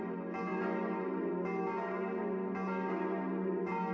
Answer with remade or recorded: recorded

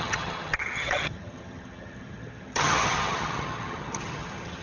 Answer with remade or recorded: remade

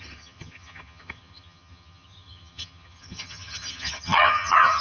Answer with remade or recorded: remade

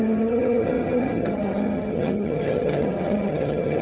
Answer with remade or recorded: remade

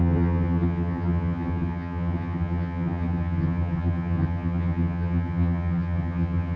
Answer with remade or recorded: remade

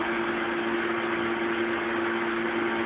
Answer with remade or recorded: recorded